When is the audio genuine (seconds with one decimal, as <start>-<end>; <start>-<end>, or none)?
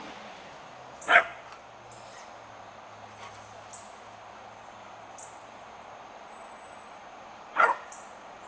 0.0-8.5